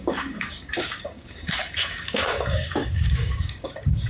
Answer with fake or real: fake